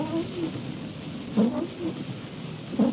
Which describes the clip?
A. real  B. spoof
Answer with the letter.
A